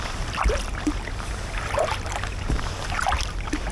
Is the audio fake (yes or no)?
no